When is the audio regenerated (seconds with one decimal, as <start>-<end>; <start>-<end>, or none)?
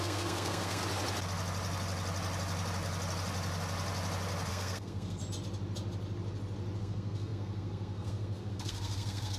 0.0-0.8; 4.5-5.2; 6.8-9.4